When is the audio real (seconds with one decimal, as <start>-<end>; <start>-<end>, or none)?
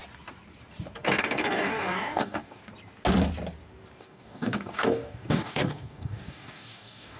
0.0-1.2; 2.6-4.0